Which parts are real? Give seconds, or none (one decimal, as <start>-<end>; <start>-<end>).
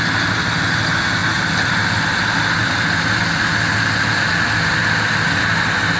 0.0-6.0